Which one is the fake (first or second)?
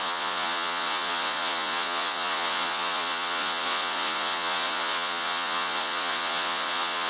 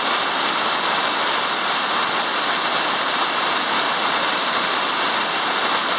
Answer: first